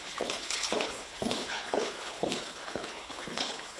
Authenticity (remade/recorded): remade